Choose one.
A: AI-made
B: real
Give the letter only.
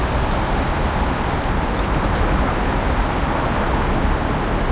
B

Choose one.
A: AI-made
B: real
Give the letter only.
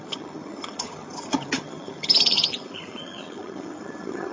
A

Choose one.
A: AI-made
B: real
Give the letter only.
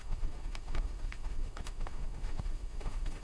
A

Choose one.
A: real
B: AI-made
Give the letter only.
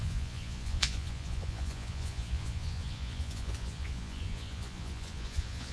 B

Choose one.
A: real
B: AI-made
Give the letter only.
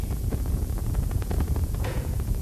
B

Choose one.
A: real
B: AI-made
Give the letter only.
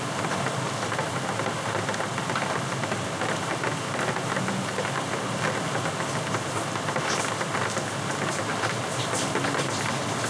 A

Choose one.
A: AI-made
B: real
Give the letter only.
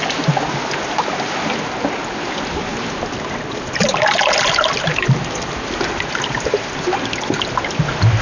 B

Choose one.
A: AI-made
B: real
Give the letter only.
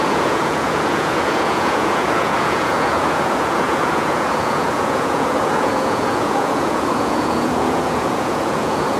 A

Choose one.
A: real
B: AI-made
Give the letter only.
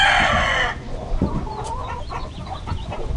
B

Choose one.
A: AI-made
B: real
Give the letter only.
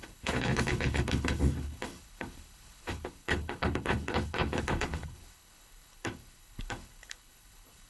A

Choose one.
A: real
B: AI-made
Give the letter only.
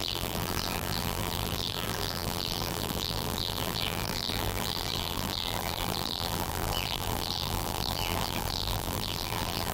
B